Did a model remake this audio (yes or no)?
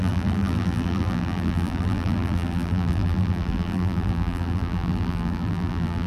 yes